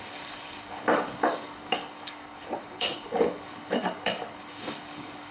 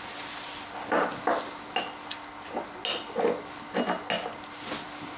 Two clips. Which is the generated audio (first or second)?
first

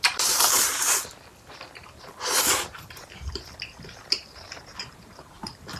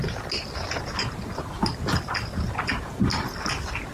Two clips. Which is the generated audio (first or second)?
first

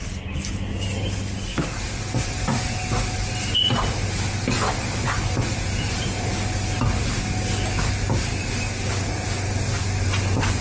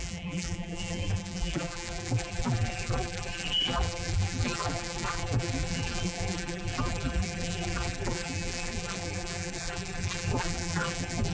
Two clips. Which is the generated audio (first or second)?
second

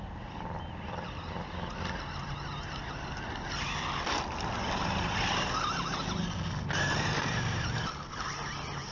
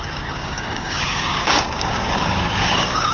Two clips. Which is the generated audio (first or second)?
second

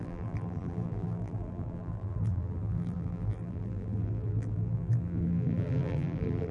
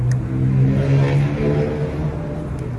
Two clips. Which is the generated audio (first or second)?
first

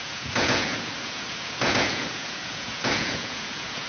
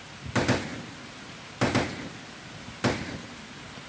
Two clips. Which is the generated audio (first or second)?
first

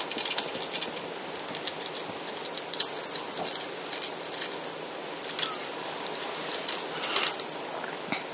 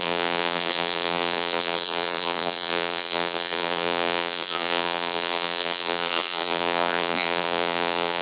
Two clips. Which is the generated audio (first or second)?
second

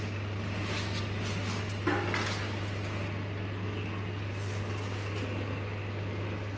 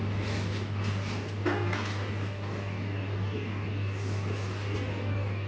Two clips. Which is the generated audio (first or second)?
second